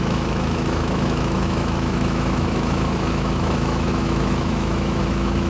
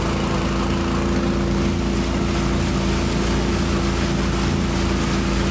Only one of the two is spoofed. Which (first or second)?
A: first